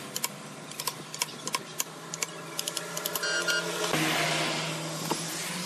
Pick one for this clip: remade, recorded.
recorded